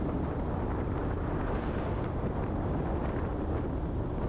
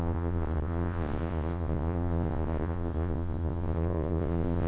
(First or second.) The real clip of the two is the first